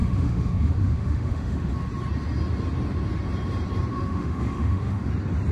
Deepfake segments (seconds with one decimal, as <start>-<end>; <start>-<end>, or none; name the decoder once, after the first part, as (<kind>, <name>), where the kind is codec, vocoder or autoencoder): 0.0-1.7 (autoencoder, DAC-VAE); 3.9-5.1